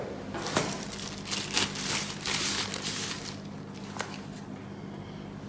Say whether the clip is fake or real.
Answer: real